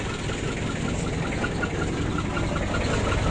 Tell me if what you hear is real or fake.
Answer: real